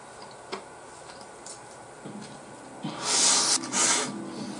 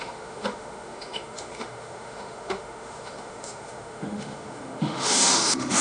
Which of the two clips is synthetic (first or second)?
second